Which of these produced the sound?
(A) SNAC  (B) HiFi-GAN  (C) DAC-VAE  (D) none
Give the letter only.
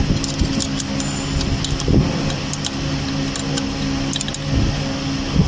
D